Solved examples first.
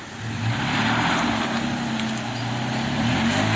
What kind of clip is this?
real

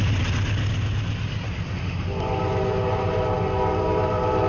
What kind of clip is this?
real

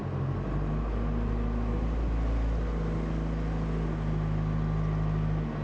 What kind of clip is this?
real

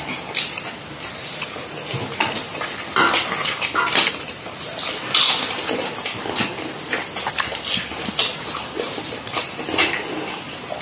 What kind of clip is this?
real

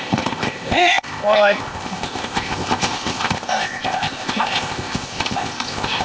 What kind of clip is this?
fake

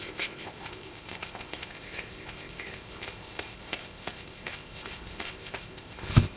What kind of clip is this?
fake